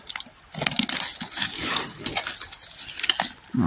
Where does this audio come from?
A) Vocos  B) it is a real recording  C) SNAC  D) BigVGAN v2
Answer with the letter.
B